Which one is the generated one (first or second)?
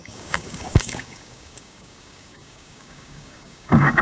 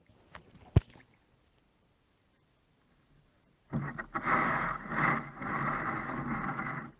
first